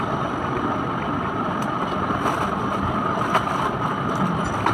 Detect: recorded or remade recorded